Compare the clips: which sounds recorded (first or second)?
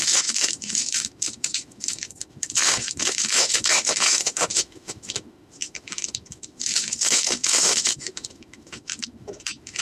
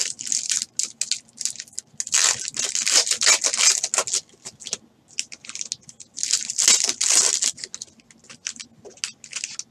second